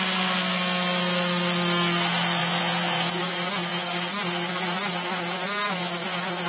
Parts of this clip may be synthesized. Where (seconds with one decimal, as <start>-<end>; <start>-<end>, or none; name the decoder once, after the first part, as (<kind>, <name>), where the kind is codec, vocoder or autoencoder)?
2.4-3.2 (vocoder, Vocos)